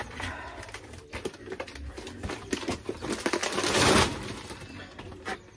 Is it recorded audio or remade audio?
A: recorded